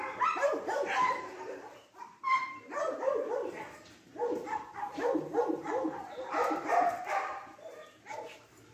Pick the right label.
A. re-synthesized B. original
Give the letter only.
A